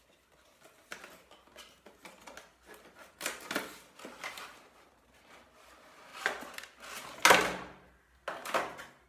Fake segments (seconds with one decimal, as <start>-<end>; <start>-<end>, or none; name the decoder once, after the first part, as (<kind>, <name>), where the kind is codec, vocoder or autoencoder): none